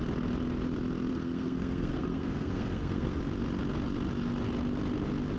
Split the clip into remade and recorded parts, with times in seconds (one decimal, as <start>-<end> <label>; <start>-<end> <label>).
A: 0.0-1.1 recorded; 1.1-3.2 remade; 3.2-5.4 recorded